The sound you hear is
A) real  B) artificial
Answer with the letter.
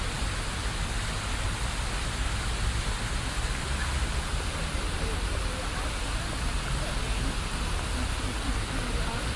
A